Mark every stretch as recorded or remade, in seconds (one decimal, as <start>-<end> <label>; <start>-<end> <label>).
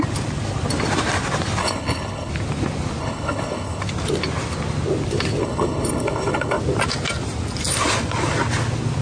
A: 0.0-1.6 recorded; 1.6-2.3 remade; 2.3-3.0 recorded; 3.0-3.8 remade; 3.8-5.4 recorded; 5.4-6.6 remade; 6.6-9.0 recorded